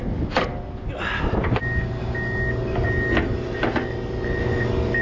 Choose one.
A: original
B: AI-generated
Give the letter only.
A